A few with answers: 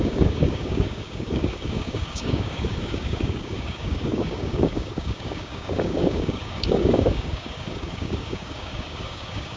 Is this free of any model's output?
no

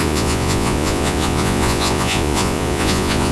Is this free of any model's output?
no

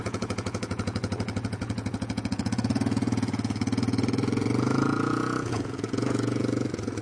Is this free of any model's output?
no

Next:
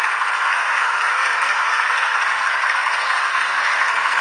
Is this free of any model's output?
no